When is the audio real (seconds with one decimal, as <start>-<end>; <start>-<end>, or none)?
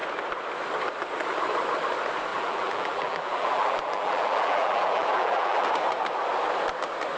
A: 0.0-2.3; 5.7-7.2